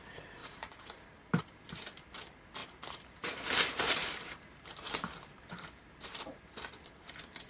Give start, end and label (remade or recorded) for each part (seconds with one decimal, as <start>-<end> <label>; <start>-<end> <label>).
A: 0.0-0.4 recorded; 0.4-1.4 remade; 1.4-2.6 recorded; 2.6-7.1 remade; 7.1-7.5 recorded